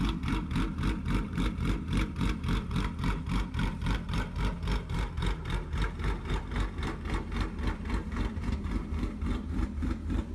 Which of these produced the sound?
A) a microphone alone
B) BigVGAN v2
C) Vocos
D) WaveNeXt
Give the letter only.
B